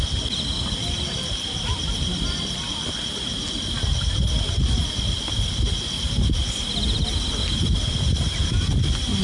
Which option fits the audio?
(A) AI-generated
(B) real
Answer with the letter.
B